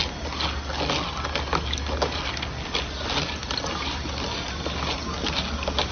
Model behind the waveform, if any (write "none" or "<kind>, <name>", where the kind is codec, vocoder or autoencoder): none